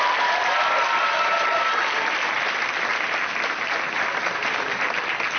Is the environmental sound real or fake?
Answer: fake